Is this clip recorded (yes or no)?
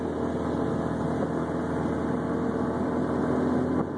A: yes